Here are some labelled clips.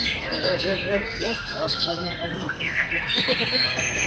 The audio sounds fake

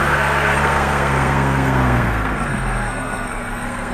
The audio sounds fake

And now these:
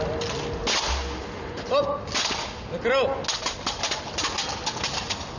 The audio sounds real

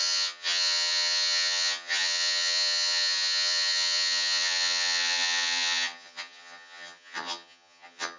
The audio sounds fake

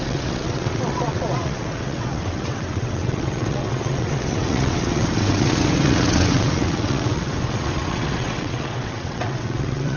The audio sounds fake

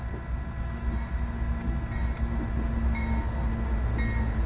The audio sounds real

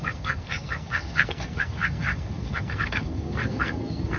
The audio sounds fake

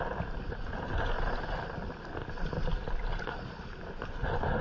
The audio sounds fake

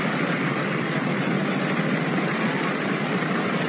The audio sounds real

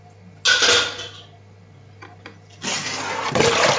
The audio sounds real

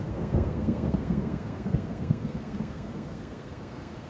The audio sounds fake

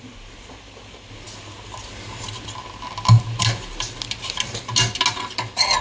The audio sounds real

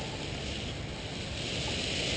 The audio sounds real